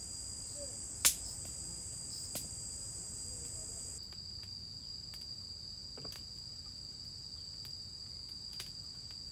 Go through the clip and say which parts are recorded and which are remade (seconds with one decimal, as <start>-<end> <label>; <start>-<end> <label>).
0.0-9.3 recorded